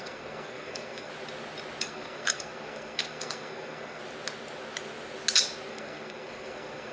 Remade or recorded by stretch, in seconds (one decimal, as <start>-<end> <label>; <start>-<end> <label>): 0.0-1.1 remade; 1.1-1.8 recorded; 1.8-4.0 remade; 4.0-5.7 recorded; 5.7-6.9 remade